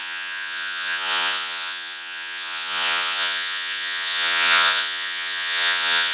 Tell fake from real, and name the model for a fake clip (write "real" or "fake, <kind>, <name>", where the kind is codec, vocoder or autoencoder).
fake, vocoder, Vocos